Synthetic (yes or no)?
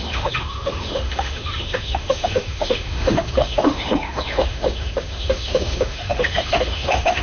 yes